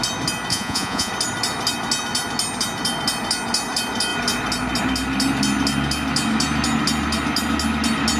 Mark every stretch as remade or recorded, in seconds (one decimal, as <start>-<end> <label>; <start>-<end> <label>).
0.0-0.5 recorded; 0.5-1.1 remade; 1.1-8.2 recorded